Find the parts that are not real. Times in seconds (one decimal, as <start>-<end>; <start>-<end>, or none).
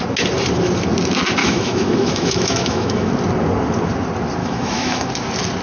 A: 1.4-3.1; 4.4-5.1